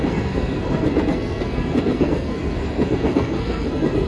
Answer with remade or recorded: remade